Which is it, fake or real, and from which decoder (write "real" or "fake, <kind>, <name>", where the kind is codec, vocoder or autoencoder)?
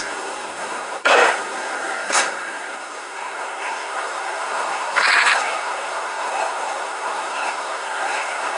fake, codec, SNAC